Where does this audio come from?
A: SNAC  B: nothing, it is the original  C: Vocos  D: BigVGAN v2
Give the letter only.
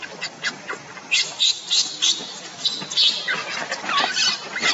B